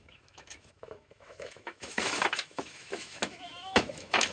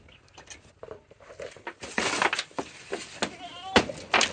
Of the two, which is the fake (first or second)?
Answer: first